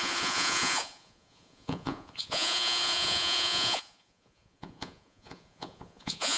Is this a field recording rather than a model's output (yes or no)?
no